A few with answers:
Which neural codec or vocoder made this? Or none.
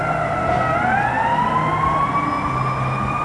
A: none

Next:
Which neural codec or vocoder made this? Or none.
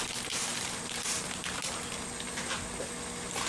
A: none